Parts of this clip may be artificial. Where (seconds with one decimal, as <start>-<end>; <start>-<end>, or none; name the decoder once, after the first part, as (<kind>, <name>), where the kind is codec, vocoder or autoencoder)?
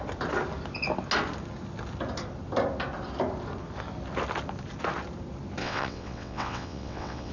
5.6-7.3 (vocoder, WaveNeXt)